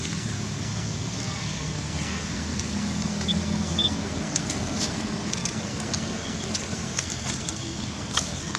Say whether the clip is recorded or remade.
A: remade